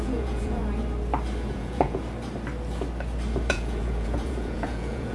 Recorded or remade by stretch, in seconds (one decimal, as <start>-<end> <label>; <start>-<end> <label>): 0.0-0.6 remade; 0.6-1.5 recorded; 1.5-2.0 remade; 2.0-3.5 recorded; 3.5-5.1 remade